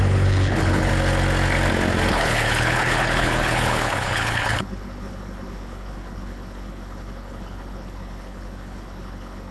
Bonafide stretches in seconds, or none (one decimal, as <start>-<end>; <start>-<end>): 0.9-2.1